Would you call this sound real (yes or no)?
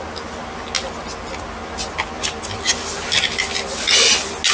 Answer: yes